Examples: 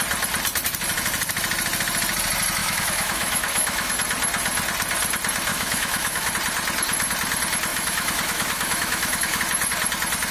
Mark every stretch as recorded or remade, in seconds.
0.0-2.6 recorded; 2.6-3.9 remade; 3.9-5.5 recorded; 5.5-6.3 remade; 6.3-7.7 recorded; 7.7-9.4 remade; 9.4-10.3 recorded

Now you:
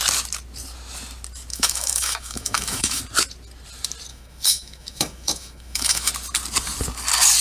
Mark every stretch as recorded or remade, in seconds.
0.0-1.5 recorded; 1.5-3.0 remade; 3.0-4.1 recorded; 4.1-6.1 remade; 6.1-7.4 recorded

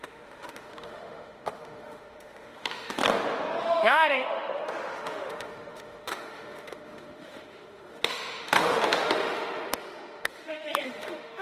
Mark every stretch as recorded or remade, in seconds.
0.0-3.0 remade; 3.0-3.6 recorded; 3.6-11.4 remade

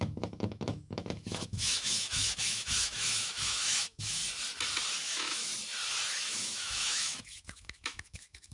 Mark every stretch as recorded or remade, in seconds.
0.0-4.2 remade; 4.2-5.0 recorded; 5.0-5.5 remade; 5.5-6.2 recorded; 6.2-8.5 remade

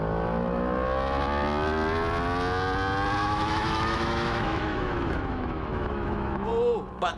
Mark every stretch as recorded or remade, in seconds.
0.0-3.2 recorded; 3.2-6.5 remade; 6.5-7.2 recorded

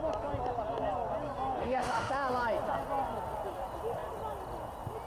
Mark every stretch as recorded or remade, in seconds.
0.0-1.6 recorded; 1.6-2.1 remade; 2.1-5.1 recorded

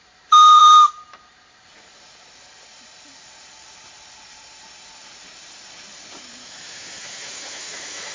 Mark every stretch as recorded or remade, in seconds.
0.0-6.4 recorded; 6.4-8.1 remade

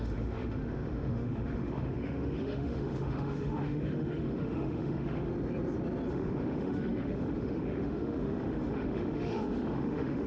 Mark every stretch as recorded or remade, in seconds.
0.0-5.3 remade; 5.3-6.1 recorded; 6.1-10.3 remade